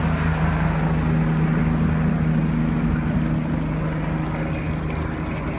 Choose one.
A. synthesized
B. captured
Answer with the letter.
B